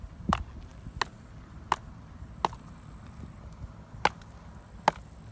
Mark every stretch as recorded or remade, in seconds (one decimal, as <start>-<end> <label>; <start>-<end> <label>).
0.0-5.3 recorded